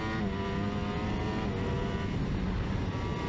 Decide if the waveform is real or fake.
real